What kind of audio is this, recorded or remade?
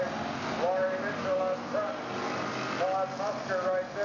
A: recorded